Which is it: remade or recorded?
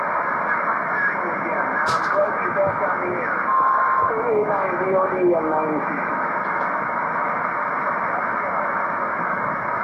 remade